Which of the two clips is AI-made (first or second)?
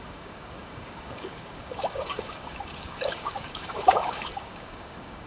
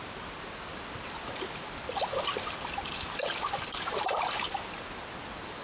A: first